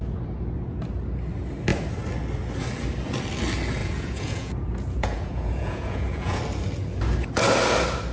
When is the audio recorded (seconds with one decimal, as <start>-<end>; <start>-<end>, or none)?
0.0-3.8; 6.4-8.1